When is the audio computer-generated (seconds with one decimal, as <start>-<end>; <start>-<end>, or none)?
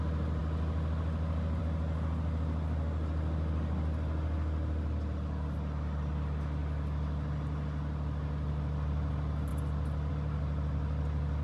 none